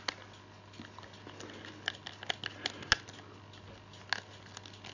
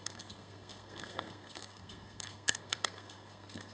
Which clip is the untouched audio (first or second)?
first